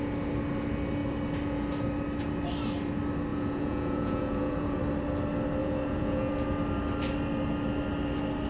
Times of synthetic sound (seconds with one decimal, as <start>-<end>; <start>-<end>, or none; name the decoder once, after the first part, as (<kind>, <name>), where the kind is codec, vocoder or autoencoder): 3.3-4.8 (vocoder, Vocos); 5.6-6.3